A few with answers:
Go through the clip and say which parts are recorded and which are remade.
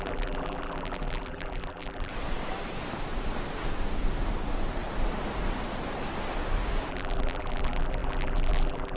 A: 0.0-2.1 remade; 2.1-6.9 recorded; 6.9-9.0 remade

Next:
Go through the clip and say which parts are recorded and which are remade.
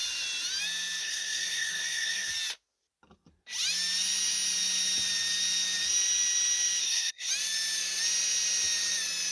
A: 0.0-1.0 recorded; 1.0-2.3 remade; 2.3-6.8 recorded; 6.8-7.3 remade; 7.3-9.3 recorded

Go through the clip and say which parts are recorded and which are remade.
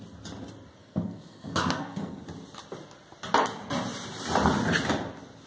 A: 0.0-0.8 recorded; 0.8-2.2 remade; 2.2-5.5 recorded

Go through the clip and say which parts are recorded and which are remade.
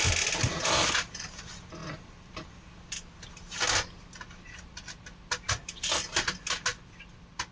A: 0.0-7.5 recorded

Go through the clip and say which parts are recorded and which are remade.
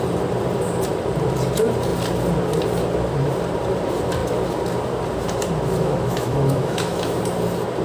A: 0.0-5.8 recorded; 5.8-7.2 remade; 7.2-7.8 recorded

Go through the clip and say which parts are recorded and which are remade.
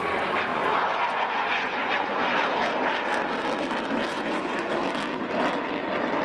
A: 0.0-0.5 recorded; 0.5-2.2 remade; 2.2-4.1 recorded; 4.1-4.7 remade; 4.7-6.2 recorded